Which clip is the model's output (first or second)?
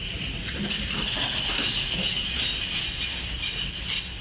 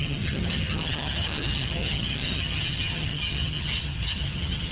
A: second